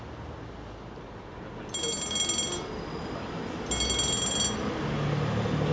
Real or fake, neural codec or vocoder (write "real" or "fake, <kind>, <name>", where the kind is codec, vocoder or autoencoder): real